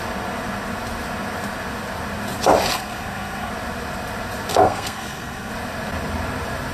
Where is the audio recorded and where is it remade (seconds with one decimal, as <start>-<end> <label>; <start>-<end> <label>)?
0.0-2.7 recorded; 2.7-3.5 remade; 3.5-4.5 recorded; 4.5-5.5 remade; 5.5-6.7 recorded